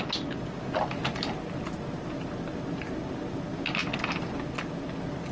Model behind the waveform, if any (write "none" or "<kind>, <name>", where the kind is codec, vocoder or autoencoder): none